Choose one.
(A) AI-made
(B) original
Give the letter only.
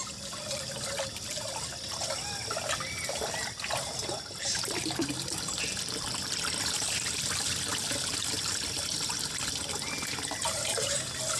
B